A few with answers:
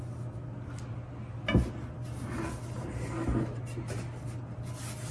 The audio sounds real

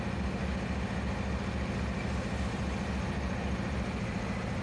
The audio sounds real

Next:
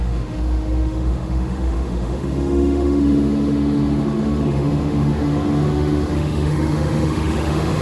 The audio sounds fake